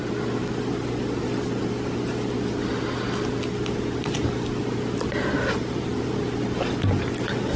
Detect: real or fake real